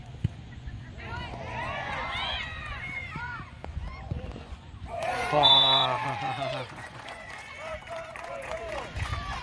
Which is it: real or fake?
fake